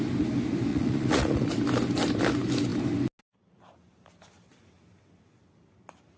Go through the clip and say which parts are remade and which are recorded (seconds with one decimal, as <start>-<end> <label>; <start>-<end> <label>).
0.0-0.7 recorded; 0.7-1.5 remade; 1.5-6.2 recorded